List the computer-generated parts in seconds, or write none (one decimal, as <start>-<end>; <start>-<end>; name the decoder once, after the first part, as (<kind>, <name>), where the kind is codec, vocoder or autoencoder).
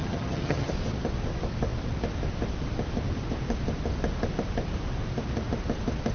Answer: 0.0-0.7 (vocoder, HiFi-GAN)